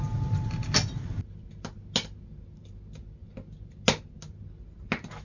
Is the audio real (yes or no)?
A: yes